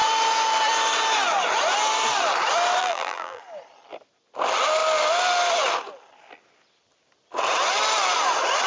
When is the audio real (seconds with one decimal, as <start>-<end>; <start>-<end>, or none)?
0.0-2.8; 3.4-8.7